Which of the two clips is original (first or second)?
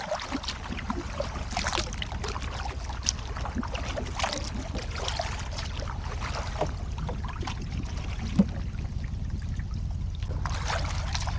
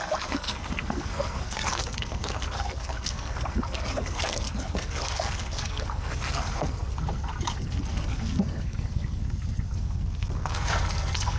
first